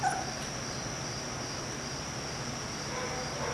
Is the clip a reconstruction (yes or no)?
no